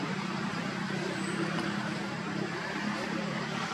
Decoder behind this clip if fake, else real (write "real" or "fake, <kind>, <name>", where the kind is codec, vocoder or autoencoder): fake, vocoder, BigVGAN v2